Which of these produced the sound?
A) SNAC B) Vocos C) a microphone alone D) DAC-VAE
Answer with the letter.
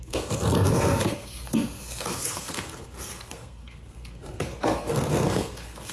A